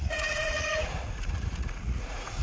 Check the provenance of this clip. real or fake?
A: fake